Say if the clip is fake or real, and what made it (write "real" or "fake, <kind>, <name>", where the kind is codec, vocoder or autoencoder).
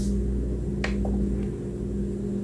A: real